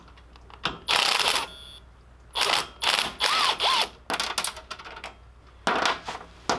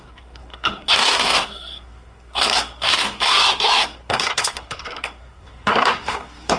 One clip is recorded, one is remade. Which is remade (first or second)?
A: second